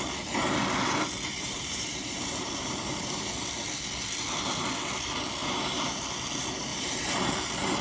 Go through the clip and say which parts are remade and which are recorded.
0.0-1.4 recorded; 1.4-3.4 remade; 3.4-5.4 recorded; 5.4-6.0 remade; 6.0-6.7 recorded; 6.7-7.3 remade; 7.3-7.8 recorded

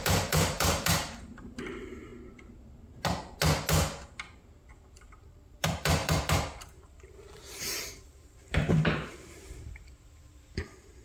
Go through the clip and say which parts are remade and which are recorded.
0.0-2.1 remade; 2.1-4.9 recorded; 4.9-11.0 remade

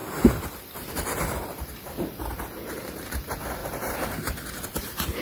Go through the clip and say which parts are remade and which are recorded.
0.0-3.1 remade; 3.1-3.6 recorded; 3.6-5.2 remade

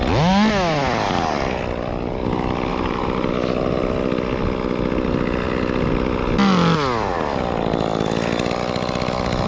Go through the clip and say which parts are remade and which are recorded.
0.0-2.7 recorded; 2.7-3.3 remade; 3.3-9.5 recorded

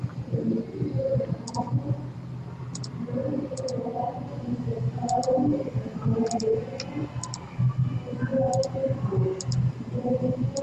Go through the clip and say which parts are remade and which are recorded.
0.0-5.2 recorded; 5.2-7.1 remade; 7.1-10.6 recorded